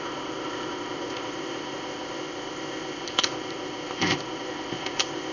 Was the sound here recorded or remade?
remade